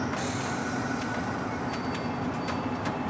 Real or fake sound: real